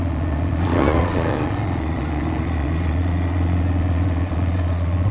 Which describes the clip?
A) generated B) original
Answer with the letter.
A